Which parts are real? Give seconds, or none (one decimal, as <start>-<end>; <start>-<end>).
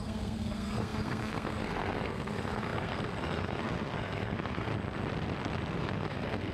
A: 4.7-5.7